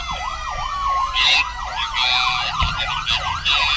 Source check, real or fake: real